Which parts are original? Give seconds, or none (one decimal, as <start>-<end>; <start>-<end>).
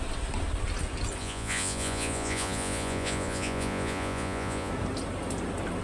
0.0-1.2; 4.7-5.8